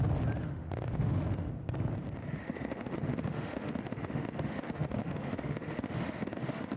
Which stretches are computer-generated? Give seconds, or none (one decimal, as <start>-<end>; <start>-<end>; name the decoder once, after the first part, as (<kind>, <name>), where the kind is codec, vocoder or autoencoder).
0.4-1.5 (autoencoder, DAC-VAE); 2.4-6.8